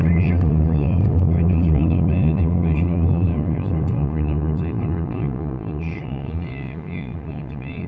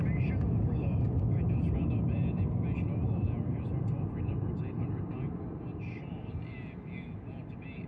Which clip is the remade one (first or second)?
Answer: first